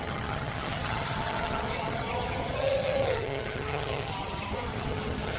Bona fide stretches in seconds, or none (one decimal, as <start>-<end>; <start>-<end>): none